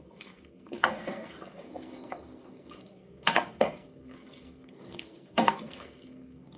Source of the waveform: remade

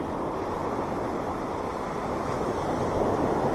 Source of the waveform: recorded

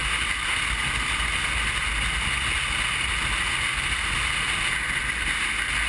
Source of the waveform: recorded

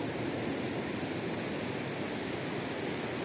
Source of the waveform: recorded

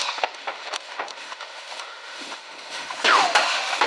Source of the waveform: remade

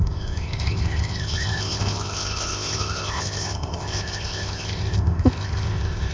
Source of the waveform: remade